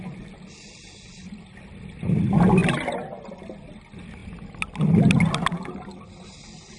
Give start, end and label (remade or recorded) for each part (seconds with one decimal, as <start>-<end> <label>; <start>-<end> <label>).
0.0-6.8 recorded